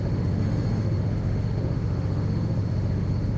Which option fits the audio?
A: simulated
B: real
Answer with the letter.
A